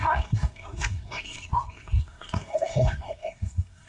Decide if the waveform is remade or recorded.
remade